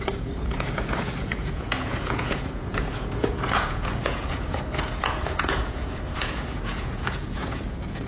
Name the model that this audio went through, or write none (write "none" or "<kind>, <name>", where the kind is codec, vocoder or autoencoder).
vocoder, Vocos